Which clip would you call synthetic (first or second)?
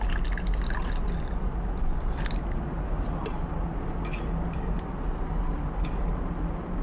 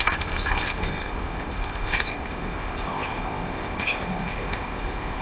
second